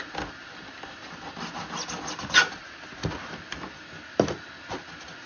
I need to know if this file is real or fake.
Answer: real